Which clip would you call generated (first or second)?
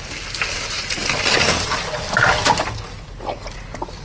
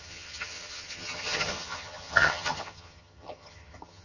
second